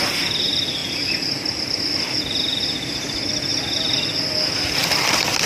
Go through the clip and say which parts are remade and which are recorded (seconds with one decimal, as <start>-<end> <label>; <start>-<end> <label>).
0.0-5.5 recorded